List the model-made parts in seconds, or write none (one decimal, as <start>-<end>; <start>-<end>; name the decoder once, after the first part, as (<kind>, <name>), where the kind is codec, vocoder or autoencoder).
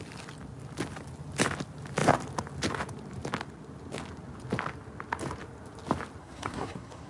6.2-7.1 (codec, SNAC)